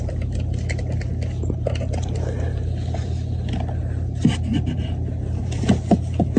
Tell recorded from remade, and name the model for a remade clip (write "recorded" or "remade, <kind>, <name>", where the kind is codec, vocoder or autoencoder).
recorded